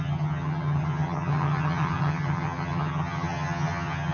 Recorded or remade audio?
remade